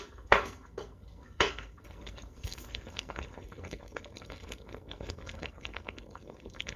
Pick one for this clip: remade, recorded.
remade